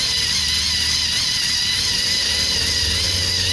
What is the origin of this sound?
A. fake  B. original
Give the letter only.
B